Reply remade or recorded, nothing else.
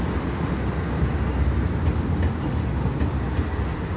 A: recorded